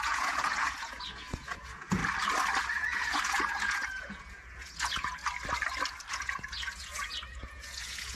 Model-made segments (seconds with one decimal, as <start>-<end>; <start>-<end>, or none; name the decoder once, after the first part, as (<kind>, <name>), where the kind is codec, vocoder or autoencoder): 0.0-2.0 (vocoder, Vocos); 2.6-5.2; 6.1-8.2